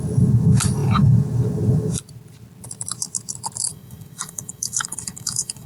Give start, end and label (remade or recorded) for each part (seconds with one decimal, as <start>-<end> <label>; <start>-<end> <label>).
0.0-3.7 recorded; 3.7-5.7 remade